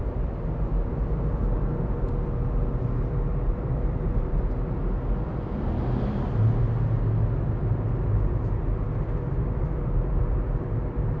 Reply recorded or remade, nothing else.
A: recorded